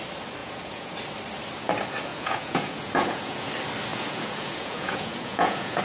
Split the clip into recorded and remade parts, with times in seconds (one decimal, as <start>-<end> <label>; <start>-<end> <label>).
0.0-0.4 recorded; 0.4-0.9 remade; 0.9-2.1 recorded; 2.1-3.5 remade; 3.5-3.9 recorded; 3.9-5.8 remade